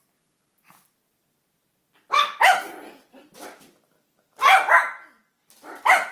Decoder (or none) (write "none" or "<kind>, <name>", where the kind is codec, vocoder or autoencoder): none